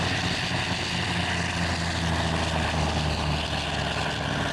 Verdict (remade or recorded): recorded